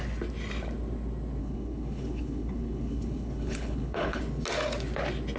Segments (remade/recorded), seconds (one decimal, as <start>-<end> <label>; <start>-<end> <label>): 0.0-1.4 recorded; 1.4-4.2 remade; 4.2-5.4 recorded

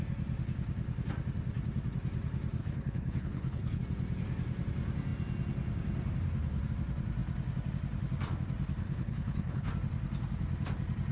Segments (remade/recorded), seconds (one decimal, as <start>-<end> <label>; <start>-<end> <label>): 0.0-2.6 recorded; 2.6-3.8 remade; 3.8-8.8 recorded; 8.8-9.7 remade; 9.7-11.1 recorded

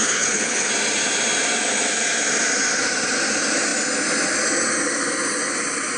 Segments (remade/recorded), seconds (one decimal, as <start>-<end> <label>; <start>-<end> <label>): 0.0-0.7 remade; 0.7-6.0 recorded

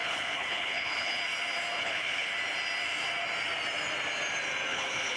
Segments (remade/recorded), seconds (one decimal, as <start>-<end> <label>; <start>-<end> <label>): 0.0-1.2 remade; 1.2-1.8 recorded; 1.8-2.3 remade; 2.3-4.7 recorded; 4.7-5.2 remade

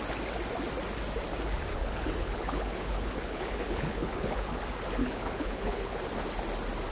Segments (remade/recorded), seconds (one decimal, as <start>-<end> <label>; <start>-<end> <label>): 0.0-1.7 recorded; 1.7-4.6 remade; 4.6-5.0 recorded; 5.0-6.0 remade; 6.0-6.9 recorded

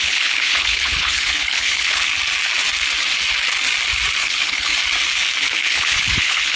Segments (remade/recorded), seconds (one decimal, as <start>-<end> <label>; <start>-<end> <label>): 0.0-2.1 remade; 2.1-4.2 recorded; 4.2-4.7 remade; 4.7-5.4 recorded; 5.4-6.6 remade

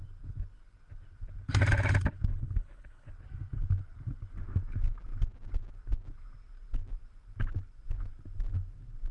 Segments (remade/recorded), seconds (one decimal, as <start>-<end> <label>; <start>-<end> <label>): 0.0-2.3 recorded; 2.3-3.1 remade; 3.1-9.1 recorded